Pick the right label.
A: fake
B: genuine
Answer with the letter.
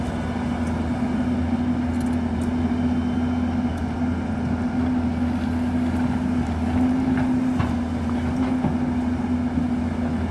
B